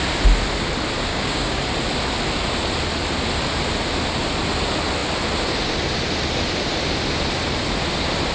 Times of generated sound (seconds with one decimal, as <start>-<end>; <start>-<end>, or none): 1.1-1.6